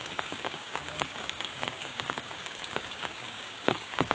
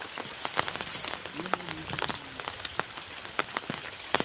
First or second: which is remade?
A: first